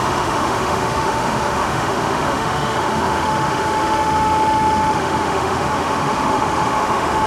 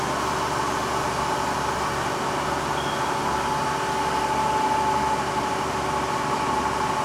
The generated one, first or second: first